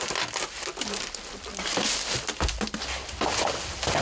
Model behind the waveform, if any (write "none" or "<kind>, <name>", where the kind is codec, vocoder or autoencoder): none